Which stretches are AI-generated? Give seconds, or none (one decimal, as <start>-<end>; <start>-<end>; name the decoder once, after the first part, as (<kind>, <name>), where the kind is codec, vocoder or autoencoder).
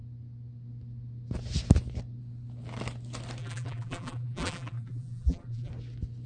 3.4-5.7 (vocoder, BigVGAN v2)